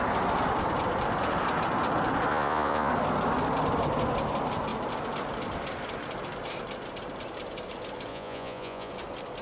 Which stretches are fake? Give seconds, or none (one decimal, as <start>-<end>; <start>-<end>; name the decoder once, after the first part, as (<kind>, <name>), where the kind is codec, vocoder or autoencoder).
2.3-2.9 (vocoder, Vocos); 8.1-8.9